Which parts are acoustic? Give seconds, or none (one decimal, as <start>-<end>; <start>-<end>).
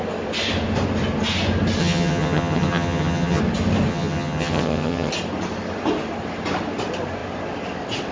0.0-1.8; 3.4-3.9; 5.1-8.1